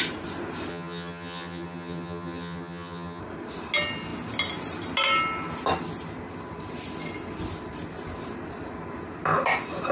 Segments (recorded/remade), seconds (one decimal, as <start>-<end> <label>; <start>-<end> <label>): 0.0-0.7 recorded; 0.7-3.2 remade; 3.2-9.9 recorded